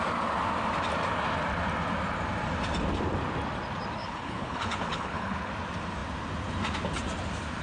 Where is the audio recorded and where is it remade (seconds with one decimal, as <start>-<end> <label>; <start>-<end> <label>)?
0.0-4.0 recorded; 4.0-5.5 remade; 5.5-7.6 recorded